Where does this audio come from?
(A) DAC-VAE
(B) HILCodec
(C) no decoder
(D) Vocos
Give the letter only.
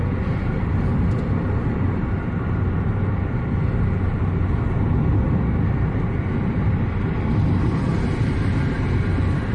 C